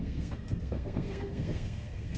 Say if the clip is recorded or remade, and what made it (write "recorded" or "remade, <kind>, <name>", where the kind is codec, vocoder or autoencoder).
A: remade, codec, SNAC